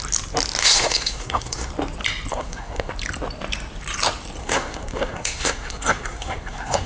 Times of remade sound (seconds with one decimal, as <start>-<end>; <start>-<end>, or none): 0.6-1.7; 2.3-2.9; 4.4-6.9